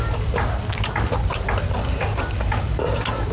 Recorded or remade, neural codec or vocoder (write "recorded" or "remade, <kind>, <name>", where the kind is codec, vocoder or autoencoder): recorded